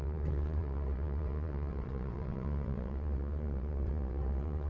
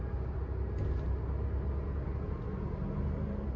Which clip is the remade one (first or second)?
first